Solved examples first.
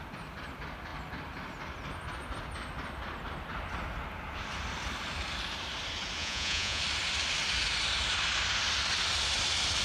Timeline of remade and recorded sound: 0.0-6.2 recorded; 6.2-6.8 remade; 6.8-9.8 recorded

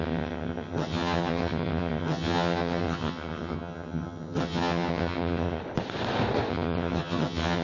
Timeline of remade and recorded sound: 0.0-5.6 remade; 5.6-6.5 recorded; 6.5-7.6 remade

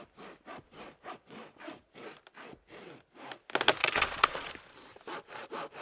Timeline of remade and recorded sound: 0.0-0.5 recorded; 0.5-1.9 remade; 1.9-3.8 recorded; 3.8-4.5 remade; 4.5-5.8 recorded

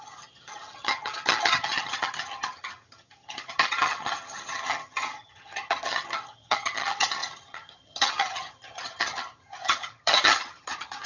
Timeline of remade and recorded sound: 0.0-11.1 remade

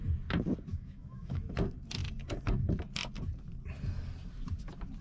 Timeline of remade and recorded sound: 0.0-0.7 recorded; 0.7-1.4 remade; 1.4-5.0 recorded

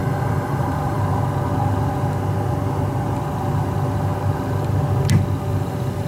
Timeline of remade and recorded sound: 0.0-1.0 remade; 1.0-5.5 recorded; 5.5-6.1 remade